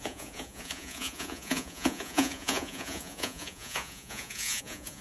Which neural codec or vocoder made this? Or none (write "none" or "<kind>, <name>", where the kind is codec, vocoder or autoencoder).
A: vocoder, Vocos